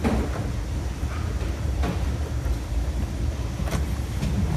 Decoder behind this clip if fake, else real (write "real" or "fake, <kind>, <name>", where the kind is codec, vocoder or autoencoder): real